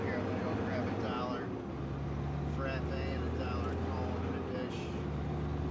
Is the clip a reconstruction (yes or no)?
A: no